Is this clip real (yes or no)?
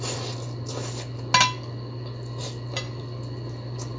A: yes